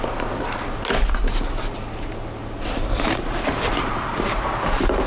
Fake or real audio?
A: fake